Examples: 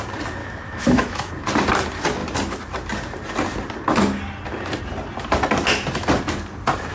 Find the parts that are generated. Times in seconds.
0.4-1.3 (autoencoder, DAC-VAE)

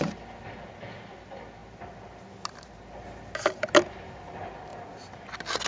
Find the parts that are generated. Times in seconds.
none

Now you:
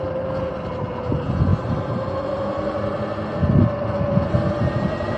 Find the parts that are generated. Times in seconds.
none

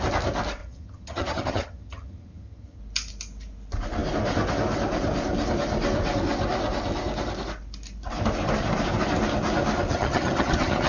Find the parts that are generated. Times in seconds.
0.6-2.8 (vocoder, HiFi-GAN); 9.9-10.9

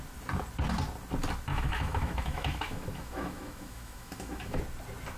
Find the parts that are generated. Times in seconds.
1.5-4.6 (autoencoder, DAC-VAE)